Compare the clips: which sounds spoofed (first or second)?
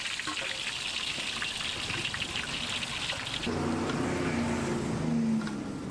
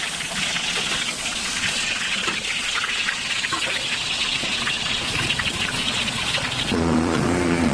second